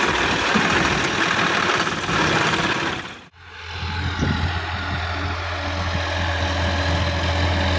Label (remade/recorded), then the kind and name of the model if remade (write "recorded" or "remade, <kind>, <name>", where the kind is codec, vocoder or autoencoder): recorded